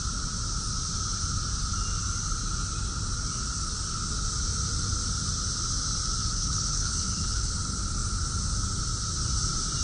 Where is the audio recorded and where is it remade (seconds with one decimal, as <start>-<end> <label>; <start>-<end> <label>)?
0.0-6.2 recorded; 6.2-7.5 remade; 7.5-9.8 recorded